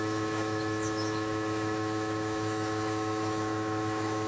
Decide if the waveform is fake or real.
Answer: fake